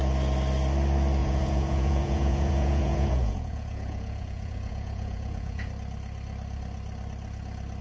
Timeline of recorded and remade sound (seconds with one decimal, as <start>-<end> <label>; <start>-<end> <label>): 0.0-1.2 recorded; 1.2-5.7 remade; 5.7-7.8 recorded